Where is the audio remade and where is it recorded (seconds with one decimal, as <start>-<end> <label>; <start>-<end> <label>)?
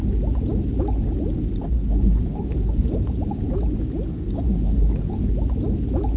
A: 0.0-1.6 recorded; 1.6-3.1 remade; 3.1-4.1 recorded; 4.1-5.3 remade; 5.3-6.2 recorded